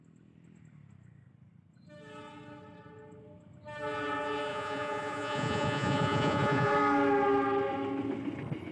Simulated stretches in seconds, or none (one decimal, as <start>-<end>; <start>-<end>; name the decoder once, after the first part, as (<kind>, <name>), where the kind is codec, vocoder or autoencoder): 4.5-6.7 (vocoder, Vocos)